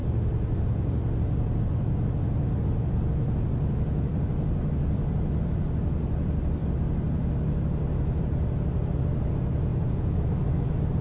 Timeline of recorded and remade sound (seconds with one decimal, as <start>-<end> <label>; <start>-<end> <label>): 0.0-9.7 recorded; 9.7-10.2 remade; 10.2-11.0 recorded

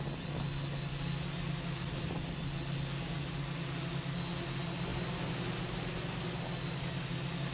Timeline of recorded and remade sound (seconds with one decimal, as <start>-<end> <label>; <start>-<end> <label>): 0.0-7.5 recorded